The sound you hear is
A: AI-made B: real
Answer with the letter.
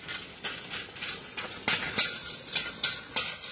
B